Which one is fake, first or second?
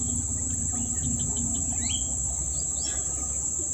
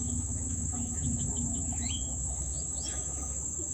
second